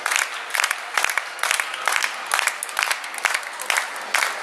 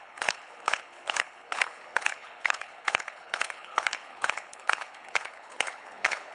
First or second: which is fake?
second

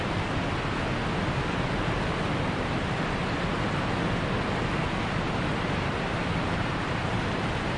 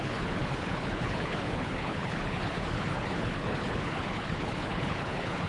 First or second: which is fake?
second